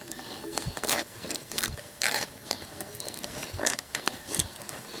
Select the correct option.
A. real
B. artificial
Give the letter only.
B